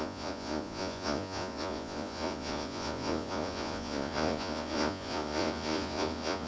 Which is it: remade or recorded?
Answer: remade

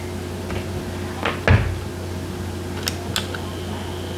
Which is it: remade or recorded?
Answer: recorded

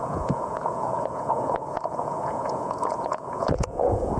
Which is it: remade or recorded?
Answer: remade